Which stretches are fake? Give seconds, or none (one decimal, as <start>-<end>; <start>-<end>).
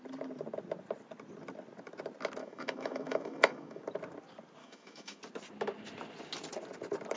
2.4-3.8; 4.6-5.2